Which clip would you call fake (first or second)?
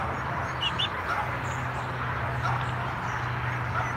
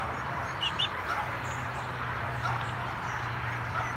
second